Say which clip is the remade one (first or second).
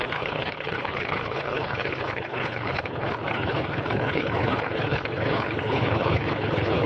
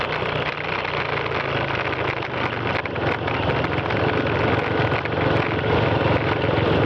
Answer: first